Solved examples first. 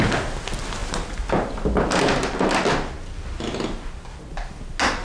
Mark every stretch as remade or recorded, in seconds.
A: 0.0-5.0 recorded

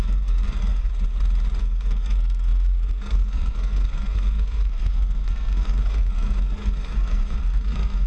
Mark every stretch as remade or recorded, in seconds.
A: 0.0-0.9 remade; 0.9-1.6 recorded; 1.6-8.1 remade

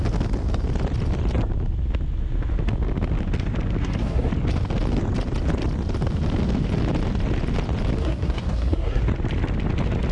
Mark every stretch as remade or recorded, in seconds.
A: 0.0-3.8 recorded; 3.8-4.3 remade; 4.3-8.0 recorded; 8.0-9.0 remade; 9.0-10.1 recorded

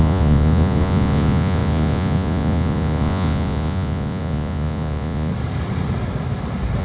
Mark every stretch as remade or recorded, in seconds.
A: 0.0-5.3 remade; 5.3-6.8 recorded

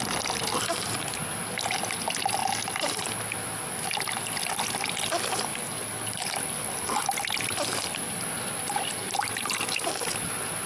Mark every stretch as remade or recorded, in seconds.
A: 0.0-5.5 recorded; 5.5-9.3 remade; 9.3-10.7 recorded

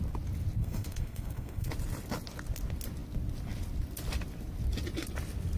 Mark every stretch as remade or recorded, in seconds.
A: 0.0-0.6 recorded; 0.6-1.7 remade; 1.7-5.6 recorded

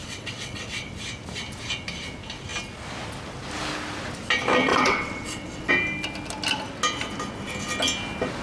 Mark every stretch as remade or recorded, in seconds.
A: 0.0-0.9 remade; 0.9-4.7 recorded; 4.7-5.7 remade; 5.7-8.4 recorded